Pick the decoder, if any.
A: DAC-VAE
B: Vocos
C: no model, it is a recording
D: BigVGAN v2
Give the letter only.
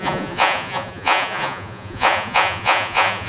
B